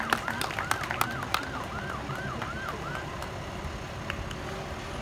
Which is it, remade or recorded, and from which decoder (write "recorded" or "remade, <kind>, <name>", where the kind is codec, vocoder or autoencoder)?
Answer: recorded